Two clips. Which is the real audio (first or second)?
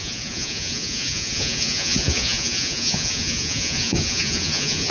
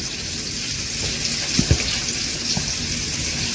second